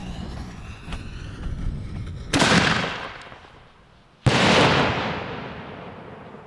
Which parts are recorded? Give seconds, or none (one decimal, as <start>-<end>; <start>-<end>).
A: 2.4-6.5